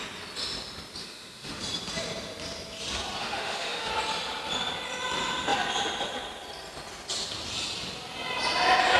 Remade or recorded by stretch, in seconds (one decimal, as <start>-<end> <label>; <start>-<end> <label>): 0.0-1.0 recorded; 1.0-1.6 remade; 1.6-3.2 recorded; 3.2-3.9 remade; 3.9-9.0 recorded